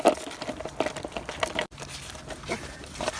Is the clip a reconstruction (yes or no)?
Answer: no